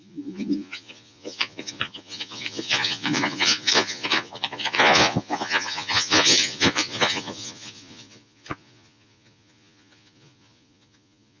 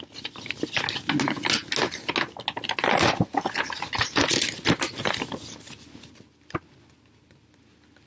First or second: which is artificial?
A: first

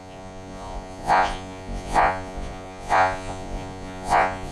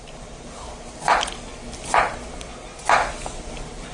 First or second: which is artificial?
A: first